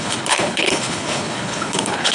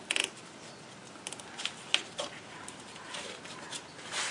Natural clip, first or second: second